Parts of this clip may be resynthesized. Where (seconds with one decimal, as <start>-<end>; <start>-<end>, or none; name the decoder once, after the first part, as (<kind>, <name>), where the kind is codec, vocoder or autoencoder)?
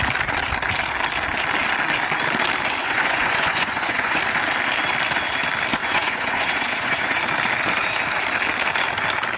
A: 2.8-4.2 (vocoder, Vocos); 5.8-7.2